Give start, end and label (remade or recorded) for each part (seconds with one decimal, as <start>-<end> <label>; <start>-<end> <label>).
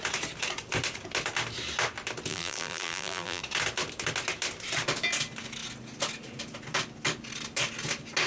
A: 0.0-2.3 recorded; 2.3-3.4 remade; 3.4-8.3 recorded